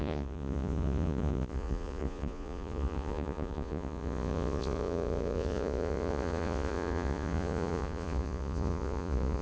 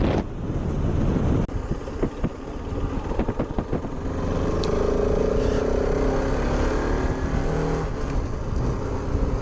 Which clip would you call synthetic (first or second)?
first